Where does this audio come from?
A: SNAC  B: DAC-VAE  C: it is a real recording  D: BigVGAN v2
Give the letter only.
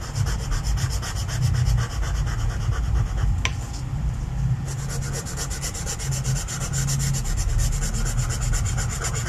C